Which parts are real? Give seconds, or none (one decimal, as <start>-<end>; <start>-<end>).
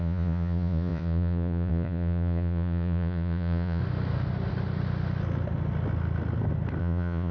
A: 3.8-6.8